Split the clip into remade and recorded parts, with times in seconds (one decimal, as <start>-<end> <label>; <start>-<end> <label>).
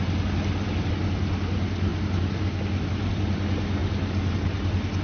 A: 0.0-5.0 recorded